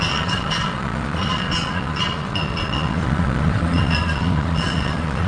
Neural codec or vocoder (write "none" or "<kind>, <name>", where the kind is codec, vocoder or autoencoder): vocoder, Vocos